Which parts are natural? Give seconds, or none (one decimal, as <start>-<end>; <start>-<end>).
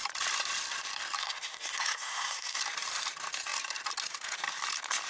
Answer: 0.0-1.2; 2.6-5.1